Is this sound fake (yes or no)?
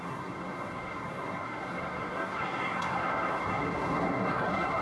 yes